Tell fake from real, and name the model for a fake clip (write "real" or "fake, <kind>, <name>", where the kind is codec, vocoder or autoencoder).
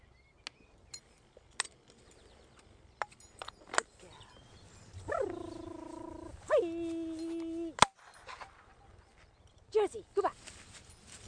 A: real